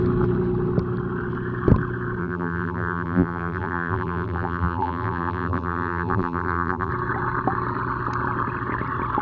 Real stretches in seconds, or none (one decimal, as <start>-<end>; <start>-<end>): 0.0-2.2; 6.9-9.2